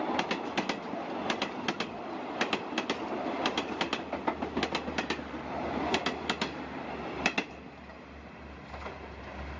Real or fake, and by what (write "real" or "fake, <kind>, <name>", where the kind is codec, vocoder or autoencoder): real